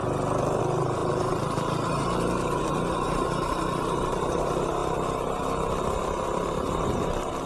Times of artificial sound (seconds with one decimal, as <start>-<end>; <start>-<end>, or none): 0.6-4.8; 6.5-7.5